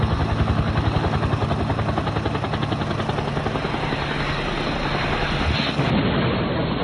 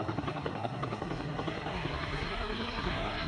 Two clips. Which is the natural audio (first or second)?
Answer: first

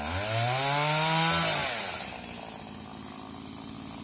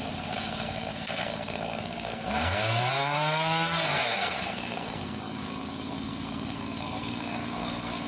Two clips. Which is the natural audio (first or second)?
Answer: first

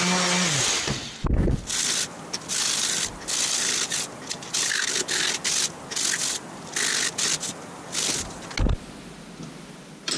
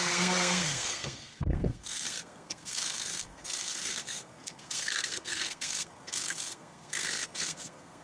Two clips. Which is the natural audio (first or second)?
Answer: first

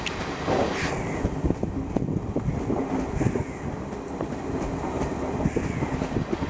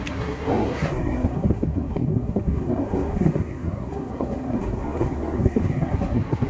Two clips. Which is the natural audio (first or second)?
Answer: first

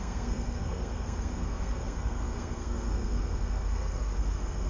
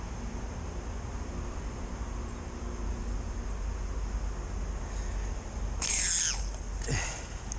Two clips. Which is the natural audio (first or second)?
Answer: second